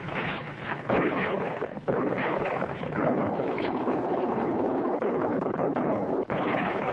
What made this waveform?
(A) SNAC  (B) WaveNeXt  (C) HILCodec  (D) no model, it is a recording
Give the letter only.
C